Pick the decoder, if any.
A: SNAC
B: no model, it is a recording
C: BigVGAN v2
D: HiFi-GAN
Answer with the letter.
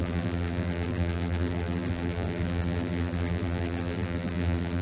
C